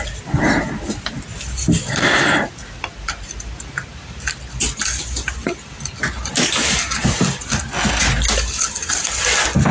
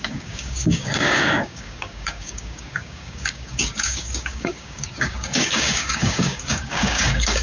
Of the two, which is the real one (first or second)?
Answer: first